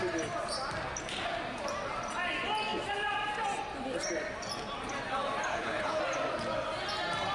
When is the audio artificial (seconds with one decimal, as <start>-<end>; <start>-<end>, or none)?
5.5-6.0